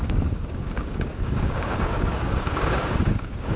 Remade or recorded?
remade